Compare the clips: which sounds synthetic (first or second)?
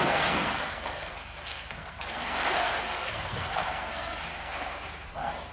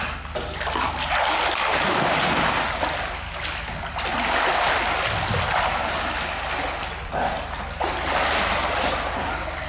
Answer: first